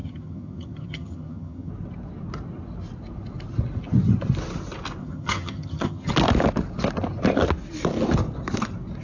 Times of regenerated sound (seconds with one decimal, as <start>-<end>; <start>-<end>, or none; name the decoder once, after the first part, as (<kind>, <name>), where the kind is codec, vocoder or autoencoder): 0.0-1.7 (vocoder, HiFi-GAN); 5.0-6.1